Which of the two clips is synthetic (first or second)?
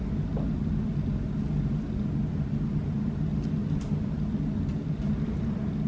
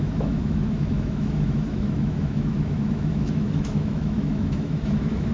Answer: second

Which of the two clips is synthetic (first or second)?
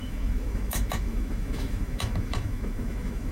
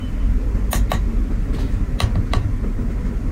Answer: first